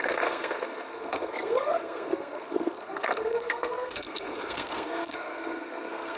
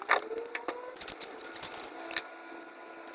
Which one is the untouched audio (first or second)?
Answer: second